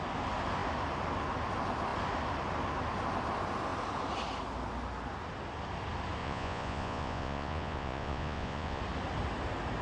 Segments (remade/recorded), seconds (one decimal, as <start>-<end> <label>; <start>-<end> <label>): 0.0-6.2 recorded; 6.2-8.8 remade; 8.8-9.8 recorded